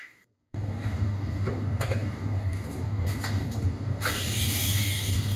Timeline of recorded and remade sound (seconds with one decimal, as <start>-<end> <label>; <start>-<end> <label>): 0.0-5.4 remade